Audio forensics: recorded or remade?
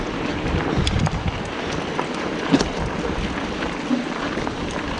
remade